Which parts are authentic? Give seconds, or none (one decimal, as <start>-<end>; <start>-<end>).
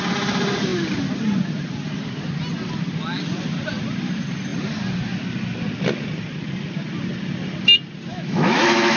0.0-8.1